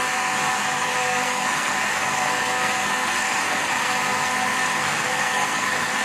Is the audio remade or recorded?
remade